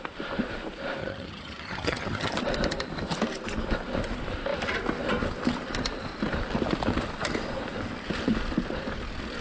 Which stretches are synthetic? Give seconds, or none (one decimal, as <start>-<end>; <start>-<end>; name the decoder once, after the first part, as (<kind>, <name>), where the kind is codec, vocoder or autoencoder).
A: 1.0-2.3 (vocoder, HiFi-GAN)